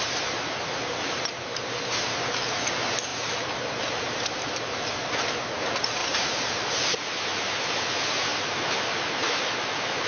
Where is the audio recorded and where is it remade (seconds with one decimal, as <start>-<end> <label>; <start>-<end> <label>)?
0.0-6.0 recorded; 6.0-6.7 remade; 6.7-10.1 recorded